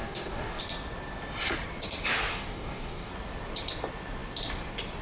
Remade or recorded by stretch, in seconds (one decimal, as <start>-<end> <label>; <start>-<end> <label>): 0.0-0.6 remade; 0.6-2.3 recorded; 2.3-3.1 remade; 3.1-5.0 recorded